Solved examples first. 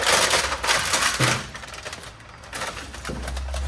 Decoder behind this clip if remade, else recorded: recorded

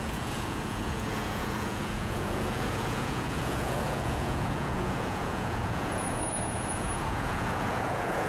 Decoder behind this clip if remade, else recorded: remade, vocoder, Vocos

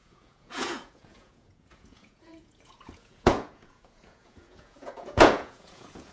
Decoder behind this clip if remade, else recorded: remade, vocoder, Vocos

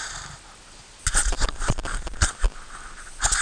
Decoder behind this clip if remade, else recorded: recorded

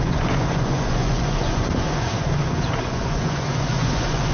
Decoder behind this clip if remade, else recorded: remade, vocoder, Vocos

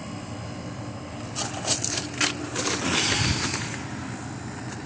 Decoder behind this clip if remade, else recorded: recorded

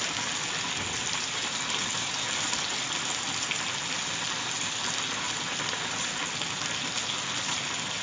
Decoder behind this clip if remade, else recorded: recorded